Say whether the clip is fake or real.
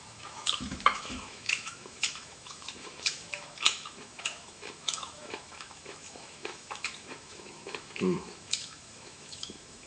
fake